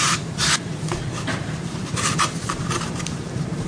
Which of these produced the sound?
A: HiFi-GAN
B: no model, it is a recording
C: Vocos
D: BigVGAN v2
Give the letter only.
D